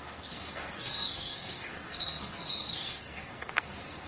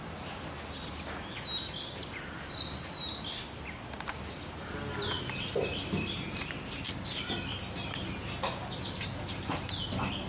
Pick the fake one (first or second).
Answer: first